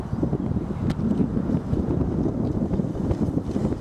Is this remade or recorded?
remade